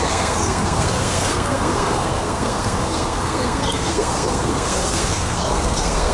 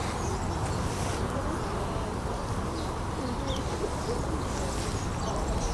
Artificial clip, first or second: first